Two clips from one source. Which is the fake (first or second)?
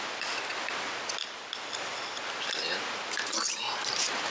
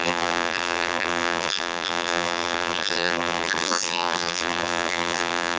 second